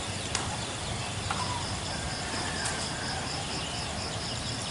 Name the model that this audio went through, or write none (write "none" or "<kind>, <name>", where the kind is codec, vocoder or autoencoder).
vocoder, BigVGAN v2